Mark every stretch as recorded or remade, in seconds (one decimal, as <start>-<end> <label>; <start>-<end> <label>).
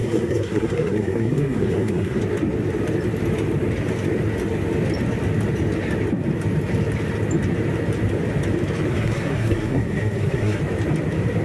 0.0-2.2 remade; 2.2-8.9 recorded; 8.9-10.6 remade; 10.6-11.4 recorded